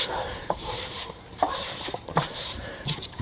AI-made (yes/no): yes